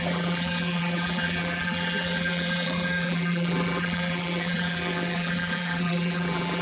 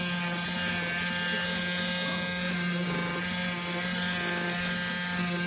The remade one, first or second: first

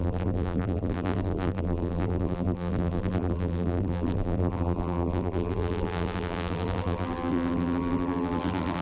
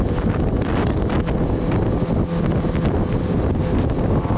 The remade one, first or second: first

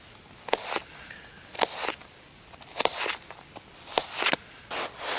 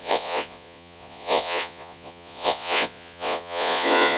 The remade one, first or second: second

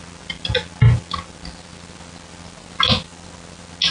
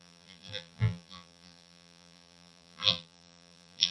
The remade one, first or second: second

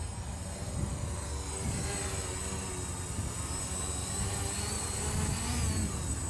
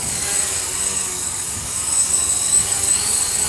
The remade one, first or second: second